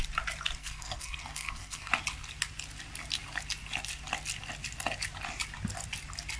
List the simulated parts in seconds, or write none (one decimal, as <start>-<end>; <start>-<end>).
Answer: 0.6-1.9

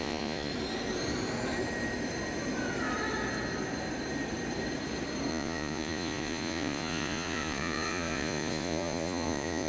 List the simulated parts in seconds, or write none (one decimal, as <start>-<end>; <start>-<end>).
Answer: 0.0-0.5; 5.3-9.7

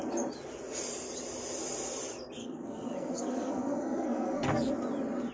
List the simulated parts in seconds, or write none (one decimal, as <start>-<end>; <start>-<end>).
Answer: 2.4-4.7

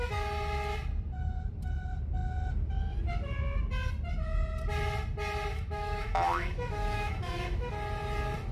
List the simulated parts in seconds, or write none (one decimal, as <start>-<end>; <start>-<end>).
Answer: 5.5-7.7

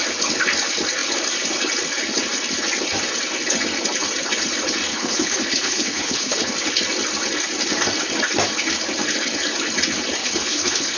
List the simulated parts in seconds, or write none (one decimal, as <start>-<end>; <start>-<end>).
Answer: 4.9-6.5; 10.2-11.0